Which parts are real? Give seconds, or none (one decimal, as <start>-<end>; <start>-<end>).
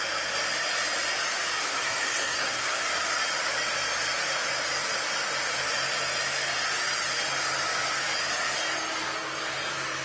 0.0-1.6; 2.8-10.0